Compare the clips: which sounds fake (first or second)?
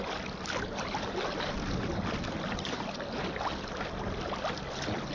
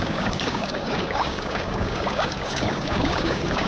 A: second